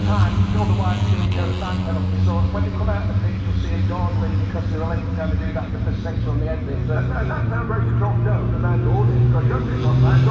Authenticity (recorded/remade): recorded